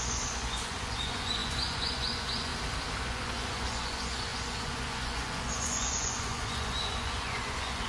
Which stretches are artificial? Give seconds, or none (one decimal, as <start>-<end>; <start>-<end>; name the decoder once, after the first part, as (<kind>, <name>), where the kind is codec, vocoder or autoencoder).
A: 0.0-2.5 (vocoder, Vocos); 3.0-7.9